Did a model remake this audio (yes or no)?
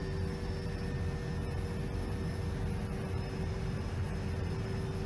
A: no